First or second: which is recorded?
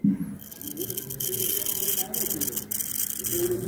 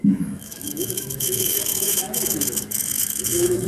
first